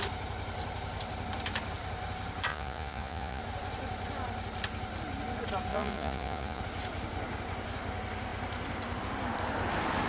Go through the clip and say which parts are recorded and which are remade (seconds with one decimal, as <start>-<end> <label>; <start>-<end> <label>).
0.0-2.5 recorded; 2.5-3.4 remade; 3.4-5.7 recorded; 5.7-6.6 remade; 6.6-10.1 recorded